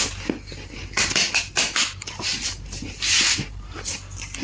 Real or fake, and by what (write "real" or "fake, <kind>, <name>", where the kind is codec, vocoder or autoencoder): real